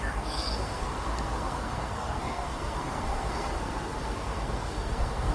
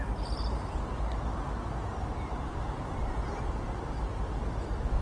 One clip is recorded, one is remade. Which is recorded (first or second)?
second